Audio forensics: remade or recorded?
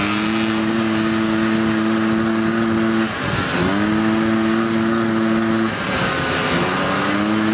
recorded